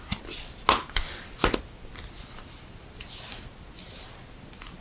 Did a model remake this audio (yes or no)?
no